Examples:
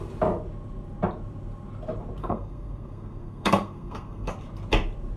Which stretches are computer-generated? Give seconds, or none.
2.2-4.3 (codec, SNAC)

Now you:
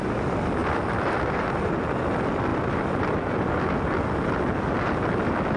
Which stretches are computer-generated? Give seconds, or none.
none

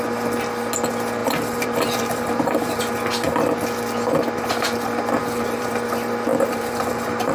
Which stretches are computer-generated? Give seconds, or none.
1.2-2.8 (vocoder, BigVGAN v2); 5.2-5.7; 6.3-7.3

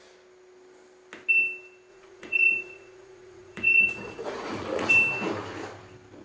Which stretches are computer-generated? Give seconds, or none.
1.9-4.9 (vocoder, Vocos)

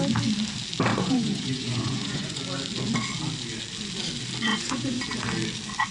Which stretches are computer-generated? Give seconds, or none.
0.9-2.4 (vocoder, Vocos); 4.5-5.0